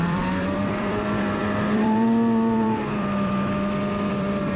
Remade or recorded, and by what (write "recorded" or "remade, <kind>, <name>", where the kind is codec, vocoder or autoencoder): remade, vocoder, BigVGAN v2